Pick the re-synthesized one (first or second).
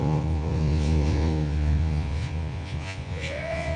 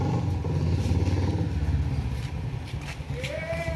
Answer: first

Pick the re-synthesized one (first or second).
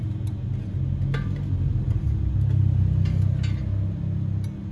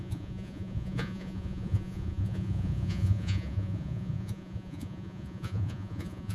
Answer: second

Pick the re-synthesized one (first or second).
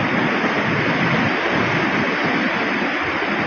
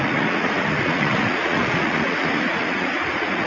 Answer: second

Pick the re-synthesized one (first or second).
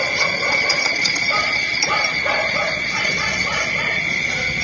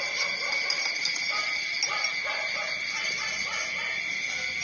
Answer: first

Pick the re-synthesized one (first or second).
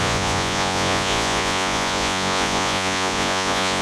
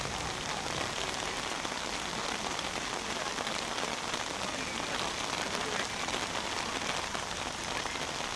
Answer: first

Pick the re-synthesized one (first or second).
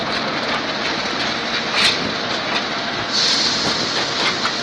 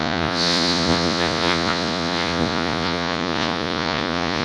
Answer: second